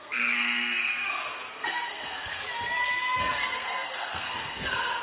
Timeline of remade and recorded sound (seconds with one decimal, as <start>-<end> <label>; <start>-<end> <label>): 0.0-2.4 remade; 2.4-3.2 recorded; 3.2-5.0 remade